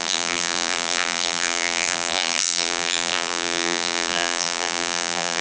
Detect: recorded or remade remade